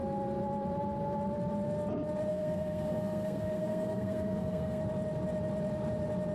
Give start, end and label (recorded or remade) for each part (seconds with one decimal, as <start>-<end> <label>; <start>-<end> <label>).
0.0-2.3 recorded; 2.3-4.8 remade; 4.8-6.3 recorded